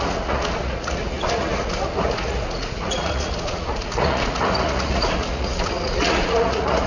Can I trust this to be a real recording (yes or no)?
no